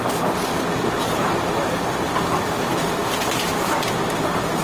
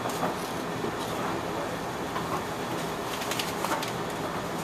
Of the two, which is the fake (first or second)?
first